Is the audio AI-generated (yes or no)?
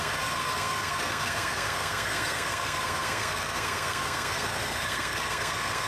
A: yes